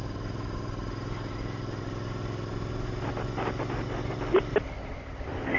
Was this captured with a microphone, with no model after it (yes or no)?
yes